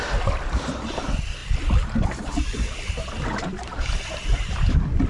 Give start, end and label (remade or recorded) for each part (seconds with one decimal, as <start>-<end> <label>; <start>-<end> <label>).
0.0-5.1 recorded